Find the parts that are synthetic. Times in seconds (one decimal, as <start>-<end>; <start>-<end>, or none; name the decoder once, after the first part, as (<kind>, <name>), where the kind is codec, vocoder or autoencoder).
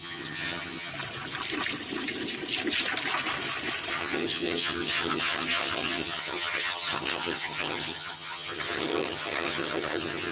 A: 0.0-0.9 (vocoder, HiFi-GAN); 3.9-10.3